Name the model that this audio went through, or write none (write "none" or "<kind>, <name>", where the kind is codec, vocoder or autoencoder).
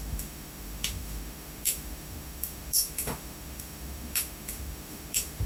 autoencoder, DAC-VAE